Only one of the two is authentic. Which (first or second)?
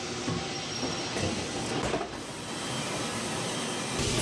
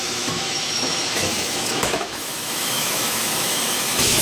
first